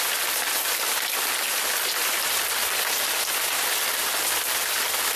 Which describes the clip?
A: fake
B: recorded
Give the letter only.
B